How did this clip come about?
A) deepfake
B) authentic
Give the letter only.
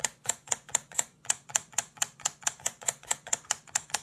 A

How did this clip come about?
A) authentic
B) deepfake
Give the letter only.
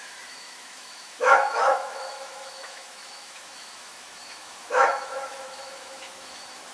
B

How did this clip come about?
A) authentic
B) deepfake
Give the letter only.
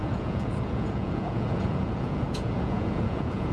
B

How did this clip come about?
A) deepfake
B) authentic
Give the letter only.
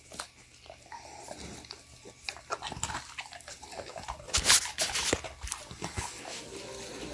B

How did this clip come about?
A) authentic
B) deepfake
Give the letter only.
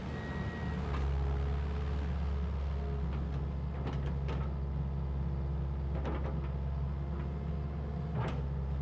A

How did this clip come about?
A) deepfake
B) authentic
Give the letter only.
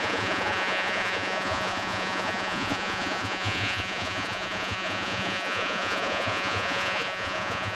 A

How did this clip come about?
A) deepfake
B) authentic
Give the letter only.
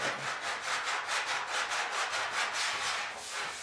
B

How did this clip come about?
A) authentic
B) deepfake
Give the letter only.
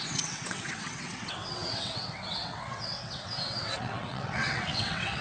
B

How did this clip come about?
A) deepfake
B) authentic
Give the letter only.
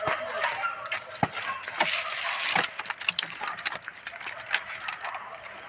B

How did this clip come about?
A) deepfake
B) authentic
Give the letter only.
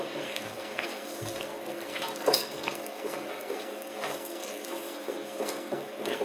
A